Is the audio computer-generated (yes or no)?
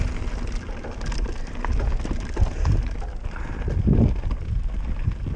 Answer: no